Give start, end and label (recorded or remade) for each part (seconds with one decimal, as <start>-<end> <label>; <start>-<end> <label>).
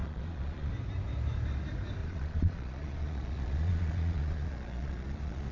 0.0-0.7 remade; 0.7-2.0 recorded; 2.0-5.5 remade